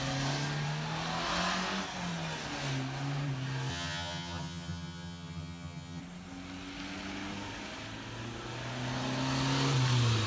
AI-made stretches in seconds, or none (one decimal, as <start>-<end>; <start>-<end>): 3.7-6.0